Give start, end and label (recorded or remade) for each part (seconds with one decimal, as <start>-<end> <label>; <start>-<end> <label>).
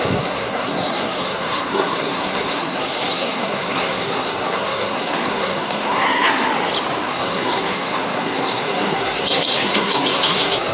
0.0-6.5 remade; 6.5-7.0 recorded; 7.0-10.7 remade